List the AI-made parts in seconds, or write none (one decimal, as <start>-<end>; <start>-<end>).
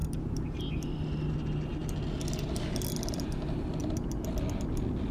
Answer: 0.0-0.6